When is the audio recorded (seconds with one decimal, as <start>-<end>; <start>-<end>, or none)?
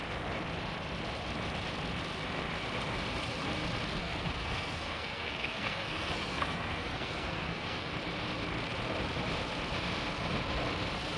0.0-4.0; 7.9-11.2